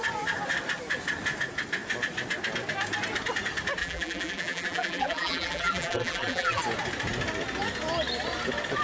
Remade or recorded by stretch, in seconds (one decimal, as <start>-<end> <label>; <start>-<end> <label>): 0.0-3.8 recorded; 3.8-6.6 remade; 6.6-8.8 recorded

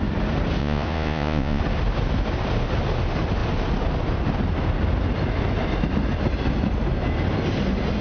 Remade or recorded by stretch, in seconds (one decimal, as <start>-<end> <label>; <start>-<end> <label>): 0.0-0.6 recorded; 0.6-1.6 remade; 1.6-8.0 recorded

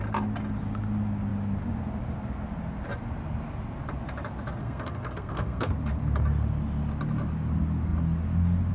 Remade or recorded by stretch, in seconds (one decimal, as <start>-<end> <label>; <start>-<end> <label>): 0.0-4.6 recorded; 4.6-5.7 remade; 5.7-8.7 recorded

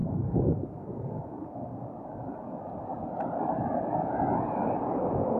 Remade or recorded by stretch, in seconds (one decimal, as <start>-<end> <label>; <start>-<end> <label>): 0.0-1.2 remade; 1.2-5.4 recorded

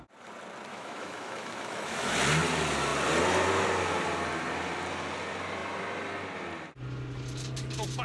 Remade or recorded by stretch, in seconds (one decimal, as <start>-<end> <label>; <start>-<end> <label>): 0.0-0.7 recorded; 0.7-2.1 remade; 2.1-8.0 recorded

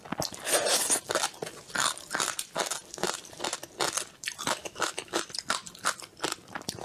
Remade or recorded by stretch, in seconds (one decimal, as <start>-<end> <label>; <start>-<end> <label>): 0.0-4.6 recorded; 4.6-5.2 remade; 5.2-6.8 recorded